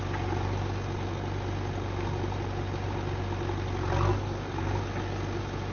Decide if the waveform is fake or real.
real